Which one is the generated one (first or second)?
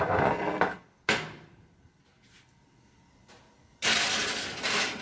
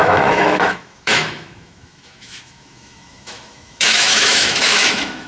second